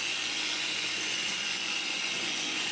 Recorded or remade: remade